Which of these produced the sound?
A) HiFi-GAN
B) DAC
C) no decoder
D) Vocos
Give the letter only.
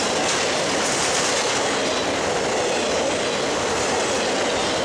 C